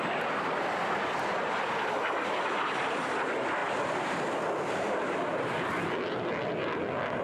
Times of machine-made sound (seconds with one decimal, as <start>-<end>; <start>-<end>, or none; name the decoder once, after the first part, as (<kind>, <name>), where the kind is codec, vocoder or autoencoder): none